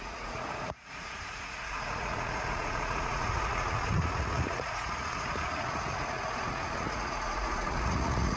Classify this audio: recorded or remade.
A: remade